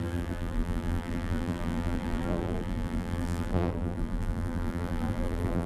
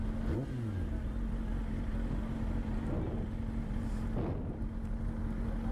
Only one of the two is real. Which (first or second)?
second